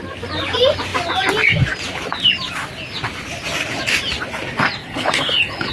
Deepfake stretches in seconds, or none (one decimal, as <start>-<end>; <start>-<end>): 4.8-5.7